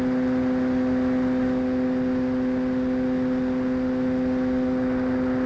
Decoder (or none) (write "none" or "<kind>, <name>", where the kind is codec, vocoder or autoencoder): none